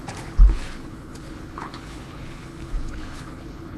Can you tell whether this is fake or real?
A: fake